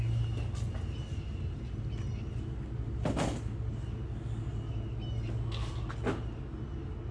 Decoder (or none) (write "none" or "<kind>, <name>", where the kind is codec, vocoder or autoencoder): none